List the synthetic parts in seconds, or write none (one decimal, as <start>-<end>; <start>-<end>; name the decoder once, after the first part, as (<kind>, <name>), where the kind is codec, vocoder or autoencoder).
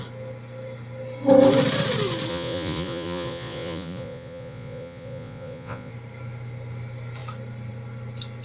2.3-5.9 (vocoder, Vocos)